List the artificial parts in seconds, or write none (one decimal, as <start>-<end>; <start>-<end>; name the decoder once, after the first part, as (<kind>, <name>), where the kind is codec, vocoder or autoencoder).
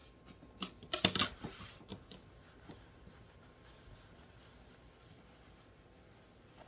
none